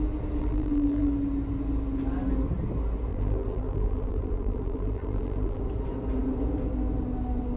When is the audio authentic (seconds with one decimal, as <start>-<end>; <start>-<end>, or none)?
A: 0.0-0.4; 1.1-3.1; 5.6-7.6